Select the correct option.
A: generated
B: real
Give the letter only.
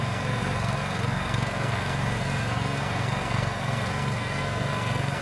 A